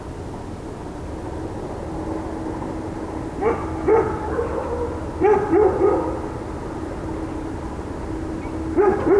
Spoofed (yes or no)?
no